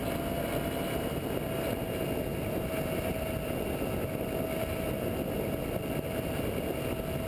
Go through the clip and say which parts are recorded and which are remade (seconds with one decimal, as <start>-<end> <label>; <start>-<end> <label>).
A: 0.0-7.3 recorded